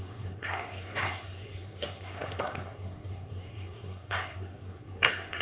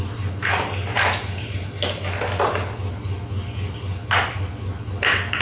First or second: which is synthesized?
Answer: first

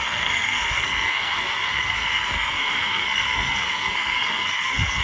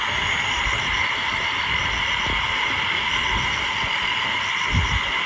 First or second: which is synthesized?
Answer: first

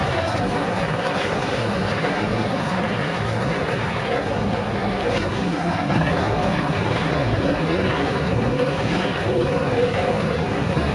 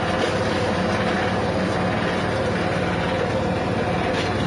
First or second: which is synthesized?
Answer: first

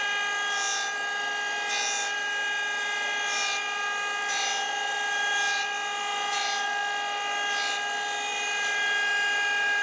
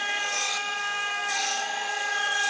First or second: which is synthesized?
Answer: second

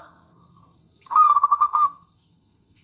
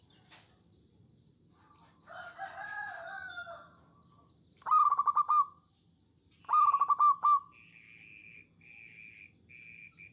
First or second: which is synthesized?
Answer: first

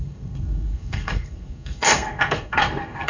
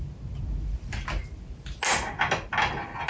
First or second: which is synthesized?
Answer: first